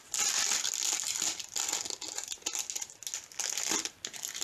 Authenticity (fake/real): real